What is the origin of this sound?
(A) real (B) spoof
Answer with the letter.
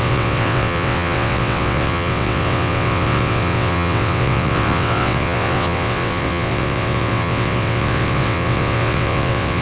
B